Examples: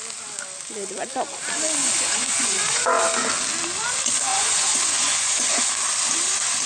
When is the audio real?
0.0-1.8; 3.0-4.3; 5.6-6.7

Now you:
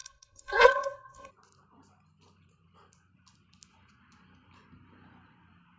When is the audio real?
1.3-5.8

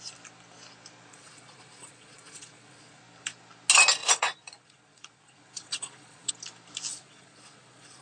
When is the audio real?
0.0-1.1; 3.0-4.0; 6.3-6.9

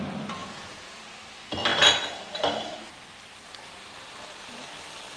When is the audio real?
0.0-0.4; 0.9-5.2

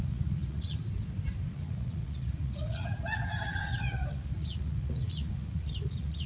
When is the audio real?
0.8-1.5

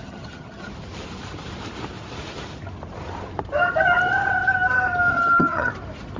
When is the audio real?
0.7-5.1; 5.7-6.2

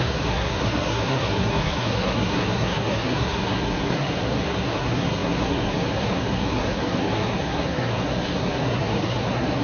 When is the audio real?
none